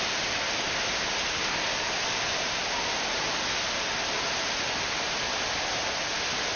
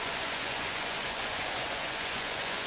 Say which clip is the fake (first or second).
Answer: second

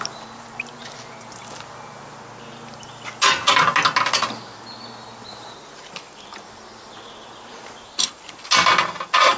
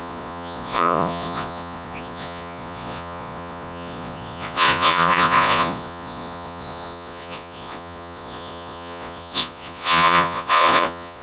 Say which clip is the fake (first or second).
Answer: second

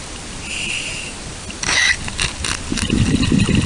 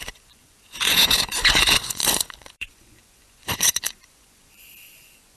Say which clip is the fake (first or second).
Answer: second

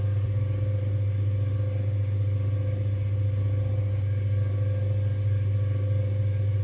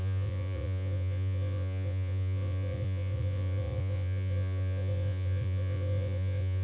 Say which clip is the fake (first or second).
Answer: second